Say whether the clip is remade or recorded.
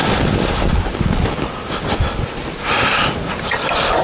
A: recorded